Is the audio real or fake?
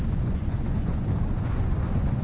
fake